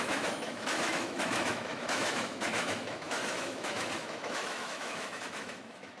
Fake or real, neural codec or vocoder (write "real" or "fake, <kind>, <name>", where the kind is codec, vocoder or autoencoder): fake, autoencoder, DAC-VAE